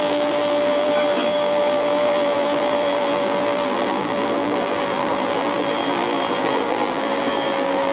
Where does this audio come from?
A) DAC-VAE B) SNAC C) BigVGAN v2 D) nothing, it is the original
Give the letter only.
C